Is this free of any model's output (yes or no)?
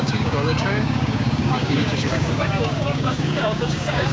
no